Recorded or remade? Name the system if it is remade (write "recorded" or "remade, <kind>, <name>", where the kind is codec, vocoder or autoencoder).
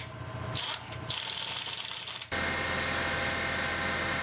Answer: recorded